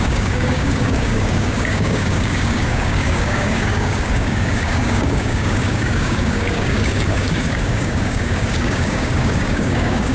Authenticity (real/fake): fake